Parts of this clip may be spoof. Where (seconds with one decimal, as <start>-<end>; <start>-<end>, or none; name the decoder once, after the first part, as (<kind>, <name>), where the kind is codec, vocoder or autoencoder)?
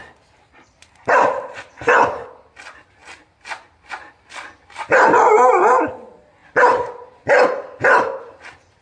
0.0-2.3 (vocoder, BigVGAN v2)